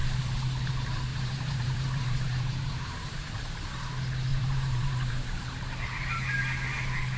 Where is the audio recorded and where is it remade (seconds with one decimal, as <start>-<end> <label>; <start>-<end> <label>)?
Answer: 0.0-1.1 recorded; 1.1-3.3 remade; 3.3-4.3 recorded; 4.3-5.4 remade; 5.4-7.2 recorded